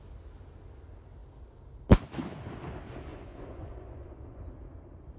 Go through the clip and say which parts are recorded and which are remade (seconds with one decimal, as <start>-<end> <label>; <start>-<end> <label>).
0.0-3.1 recorded; 3.1-4.4 remade; 4.4-5.2 recorded

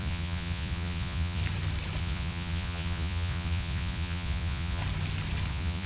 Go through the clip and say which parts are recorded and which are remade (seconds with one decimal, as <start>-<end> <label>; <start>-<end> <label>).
0.0-1.4 remade; 1.4-2.0 recorded; 2.0-4.8 remade; 4.8-5.5 recorded; 5.5-5.9 remade

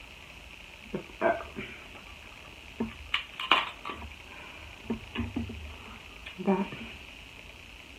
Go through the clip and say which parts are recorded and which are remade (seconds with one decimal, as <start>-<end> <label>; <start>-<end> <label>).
0.0-6.2 recorded; 6.2-6.9 remade; 6.9-8.0 recorded

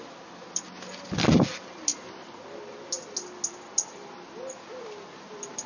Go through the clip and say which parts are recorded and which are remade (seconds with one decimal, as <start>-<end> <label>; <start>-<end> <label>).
0.0-5.7 recorded

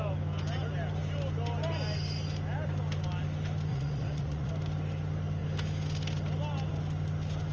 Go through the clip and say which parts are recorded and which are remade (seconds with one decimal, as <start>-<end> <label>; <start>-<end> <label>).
0.0-3.7 recorded; 3.7-4.5 remade; 4.5-7.5 recorded

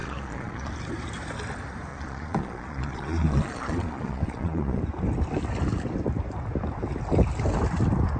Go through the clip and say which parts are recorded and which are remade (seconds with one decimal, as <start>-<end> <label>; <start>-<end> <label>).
0.0-0.7 remade; 0.7-1.9 recorded; 1.9-4.8 remade; 4.8-8.2 recorded

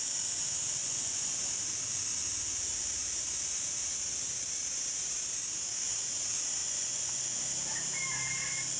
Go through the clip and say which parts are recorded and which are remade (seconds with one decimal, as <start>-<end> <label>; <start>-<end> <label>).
0.0-0.8 recorded; 0.8-1.3 remade; 1.3-6.6 recorded; 6.6-7.4 remade; 7.4-8.8 recorded

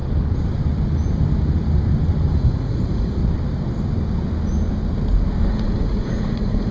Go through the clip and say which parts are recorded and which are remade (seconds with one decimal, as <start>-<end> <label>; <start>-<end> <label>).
0.0-2.3 recorded; 2.3-3.2 remade; 3.2-5.5 recorded; 5.5-6.7 remade